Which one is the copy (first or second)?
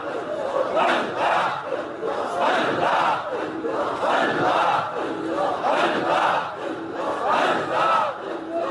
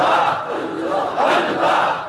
second